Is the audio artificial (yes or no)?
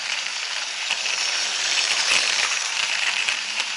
yes